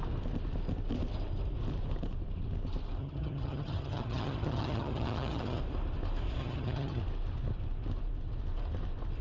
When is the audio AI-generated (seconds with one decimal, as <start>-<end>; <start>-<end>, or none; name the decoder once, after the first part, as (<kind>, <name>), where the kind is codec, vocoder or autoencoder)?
3.0-5.6 (vocoder, HiFi-GAN); 6.4-7.0